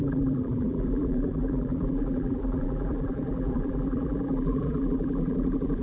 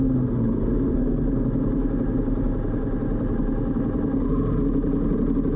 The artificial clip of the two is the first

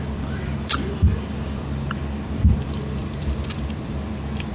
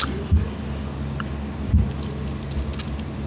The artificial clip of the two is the first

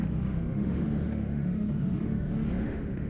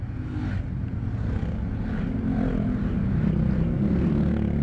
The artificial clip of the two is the first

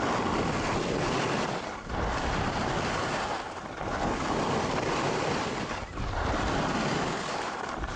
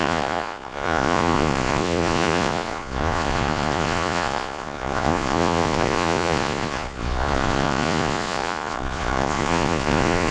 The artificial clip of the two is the second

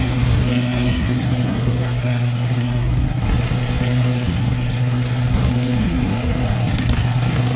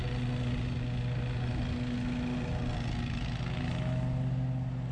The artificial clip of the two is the first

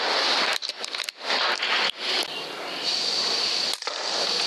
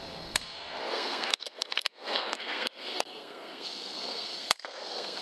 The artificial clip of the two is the second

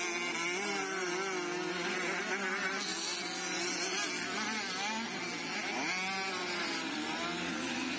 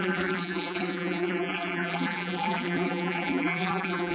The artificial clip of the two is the second